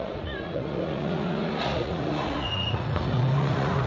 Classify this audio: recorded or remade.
remade